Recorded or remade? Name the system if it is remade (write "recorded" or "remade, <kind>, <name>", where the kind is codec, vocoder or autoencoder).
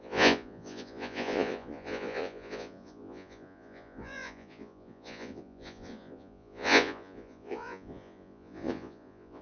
remade, vocoder, Vocos